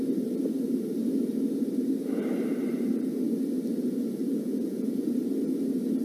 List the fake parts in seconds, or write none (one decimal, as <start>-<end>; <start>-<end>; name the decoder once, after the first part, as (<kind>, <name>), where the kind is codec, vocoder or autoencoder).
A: 4.3-5.1 (vocoder, Vocos)